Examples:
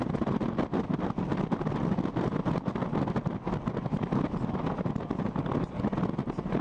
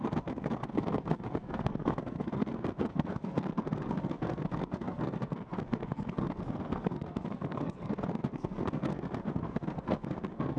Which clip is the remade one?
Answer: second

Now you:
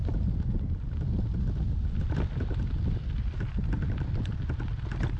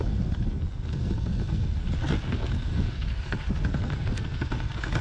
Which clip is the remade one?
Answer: second